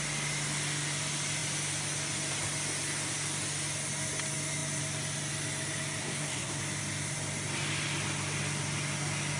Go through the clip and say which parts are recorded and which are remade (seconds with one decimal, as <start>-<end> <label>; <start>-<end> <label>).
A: 0.0-6.0 recorded; 6.0-6.6 remade; 6.6-9.4 recorded